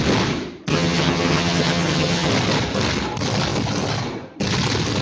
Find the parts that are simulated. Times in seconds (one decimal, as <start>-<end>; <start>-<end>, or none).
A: 0.7-2.3